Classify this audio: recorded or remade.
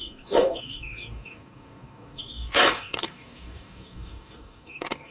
remade